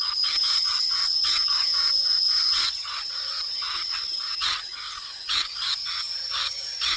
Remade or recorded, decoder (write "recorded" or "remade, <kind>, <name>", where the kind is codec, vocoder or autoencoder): remade, vocoder, HiFi-GAN